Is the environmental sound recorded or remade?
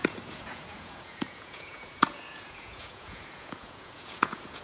remade